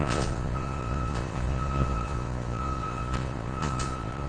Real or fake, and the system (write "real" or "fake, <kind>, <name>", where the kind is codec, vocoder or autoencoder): fake, vocoder, Vocos